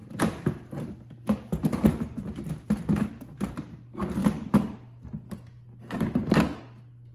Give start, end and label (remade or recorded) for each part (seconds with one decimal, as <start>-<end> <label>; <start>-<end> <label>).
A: 0.0-0.9 remade; 0.9-2.1 recorded; 2.1-3.1 remade; 3.1-7.1 recorded